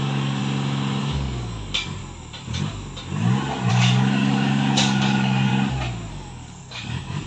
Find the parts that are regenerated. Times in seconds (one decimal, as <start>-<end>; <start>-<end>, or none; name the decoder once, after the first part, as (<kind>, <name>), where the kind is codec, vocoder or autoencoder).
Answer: 0.0-0.4 (codec, DAC); 1.0-2.0; 3.7-5.5; 6.1-7.3